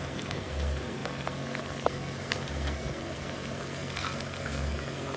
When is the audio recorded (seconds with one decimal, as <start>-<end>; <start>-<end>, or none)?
none